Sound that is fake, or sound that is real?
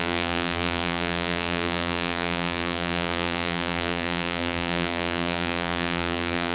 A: fake